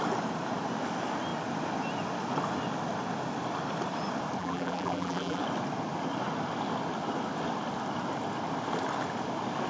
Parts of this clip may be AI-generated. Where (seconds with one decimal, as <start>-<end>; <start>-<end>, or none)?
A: 4.4-5.4